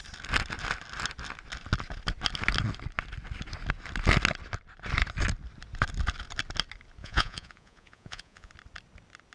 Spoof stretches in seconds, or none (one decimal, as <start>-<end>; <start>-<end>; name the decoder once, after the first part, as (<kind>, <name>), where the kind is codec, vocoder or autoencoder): 7.0-8.5 (vocoder, Vocos)